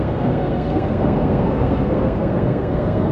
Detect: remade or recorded remade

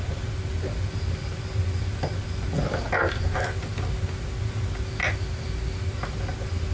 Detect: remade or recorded recorded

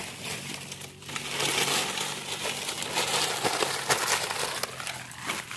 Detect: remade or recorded recorded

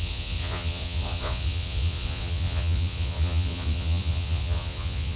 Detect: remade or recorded remade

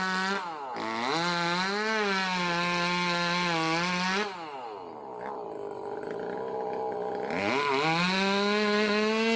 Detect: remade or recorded recorded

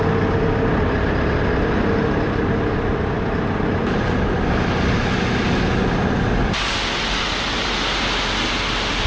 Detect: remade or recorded recorded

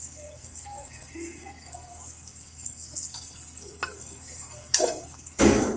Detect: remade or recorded remade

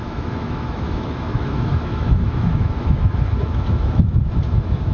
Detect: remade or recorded remade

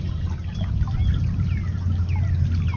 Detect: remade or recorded recorded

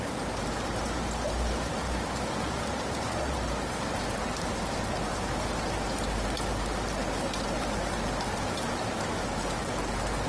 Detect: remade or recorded remade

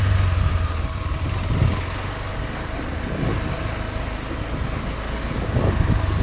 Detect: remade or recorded recorded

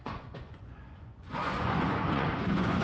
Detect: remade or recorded remade